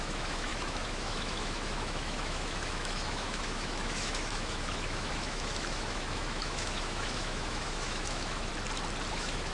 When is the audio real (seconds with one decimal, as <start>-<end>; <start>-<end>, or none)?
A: 8.5-9.1